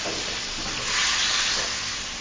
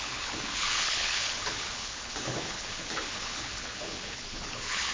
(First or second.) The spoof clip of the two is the second